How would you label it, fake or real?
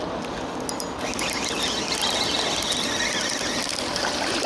real